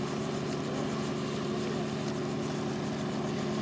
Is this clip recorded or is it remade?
recorded